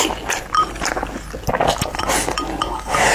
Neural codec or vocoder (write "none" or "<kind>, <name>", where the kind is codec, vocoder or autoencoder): none